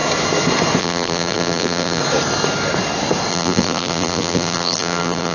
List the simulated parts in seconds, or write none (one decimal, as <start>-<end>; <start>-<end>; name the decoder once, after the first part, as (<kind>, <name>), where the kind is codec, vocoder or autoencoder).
0.8-2.0 (vocoder, BigVGAN v2); 3.3-5.3